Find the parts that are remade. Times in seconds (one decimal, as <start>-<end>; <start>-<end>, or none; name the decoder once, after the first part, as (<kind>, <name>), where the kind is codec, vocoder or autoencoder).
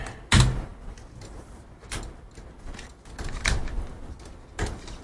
none